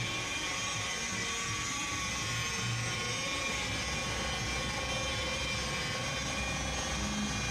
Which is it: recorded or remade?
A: recorded